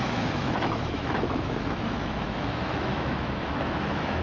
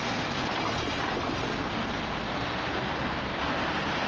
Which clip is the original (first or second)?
second